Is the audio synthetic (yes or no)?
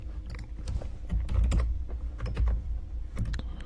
no